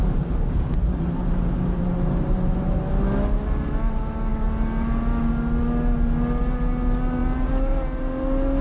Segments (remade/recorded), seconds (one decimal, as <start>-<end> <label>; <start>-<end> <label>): 0.0-2.8 remade; 2.8-8.6 recorded